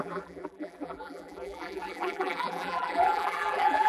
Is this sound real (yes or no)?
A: no